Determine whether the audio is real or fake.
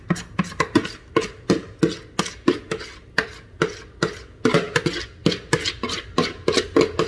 real